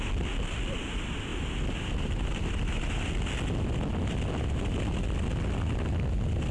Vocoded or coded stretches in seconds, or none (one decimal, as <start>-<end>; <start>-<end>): 1.3-3.1